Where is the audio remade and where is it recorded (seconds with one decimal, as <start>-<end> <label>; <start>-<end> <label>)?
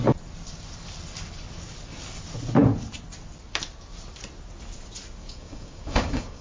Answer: 0.0-5.2 recorded; 5.2-6.4 remade